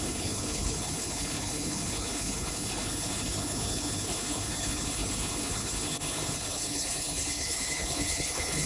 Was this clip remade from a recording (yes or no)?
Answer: yes